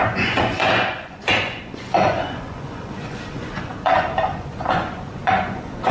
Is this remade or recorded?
remade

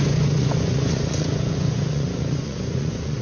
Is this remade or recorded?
remade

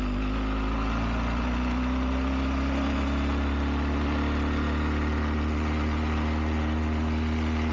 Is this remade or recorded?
recorded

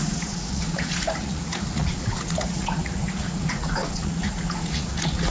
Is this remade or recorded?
remade